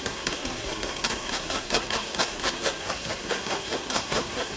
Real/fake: fake